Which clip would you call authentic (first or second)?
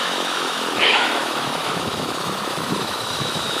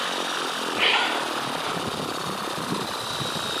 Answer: second